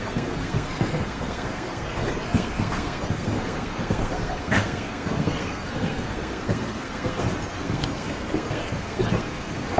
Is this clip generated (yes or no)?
yes